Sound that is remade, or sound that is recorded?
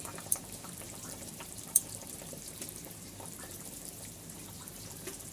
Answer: remade